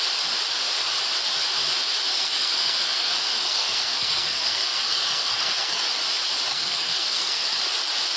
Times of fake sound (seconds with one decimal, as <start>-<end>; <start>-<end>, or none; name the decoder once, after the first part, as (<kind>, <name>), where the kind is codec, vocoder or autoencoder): 2.1-5.9 (codec, SNAC); 6.5-7.6